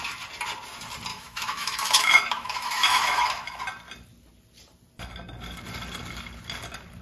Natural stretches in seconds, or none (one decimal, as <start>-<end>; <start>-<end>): 0.0-1.1; 3.6-7.0